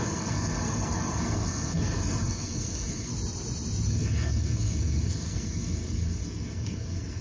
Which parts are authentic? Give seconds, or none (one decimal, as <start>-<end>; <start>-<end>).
3.1-3.9